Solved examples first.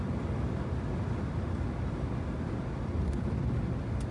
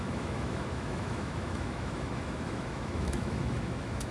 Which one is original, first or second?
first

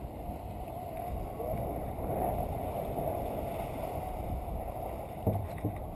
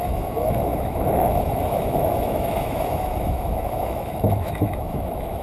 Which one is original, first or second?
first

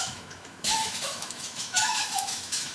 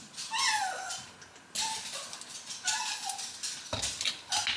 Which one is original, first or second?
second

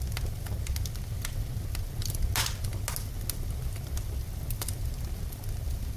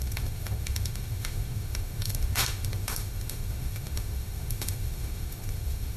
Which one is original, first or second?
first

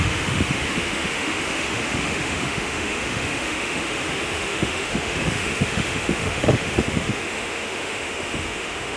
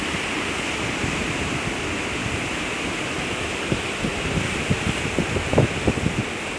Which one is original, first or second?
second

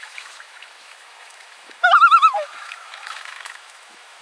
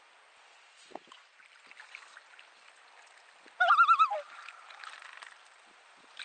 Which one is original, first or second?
second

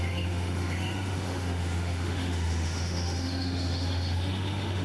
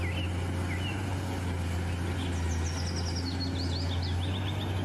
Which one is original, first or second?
second